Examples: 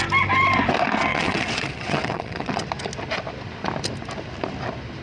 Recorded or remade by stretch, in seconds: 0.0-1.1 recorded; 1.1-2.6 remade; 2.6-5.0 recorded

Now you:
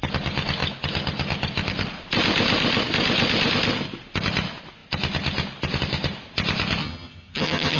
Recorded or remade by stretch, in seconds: 0.0-6.8 recorded; 6.8-7.8 remade

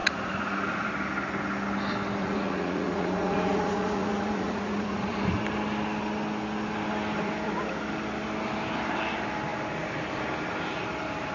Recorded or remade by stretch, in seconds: 0.0-0.9 remade; 0.9-2.2 recorded; 2.2-5.4 remade; 5.4-11.3 recorded